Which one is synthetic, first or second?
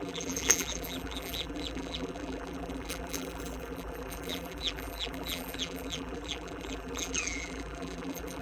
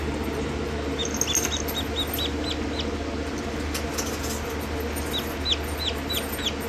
first